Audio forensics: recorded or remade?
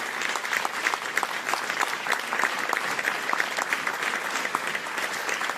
recorded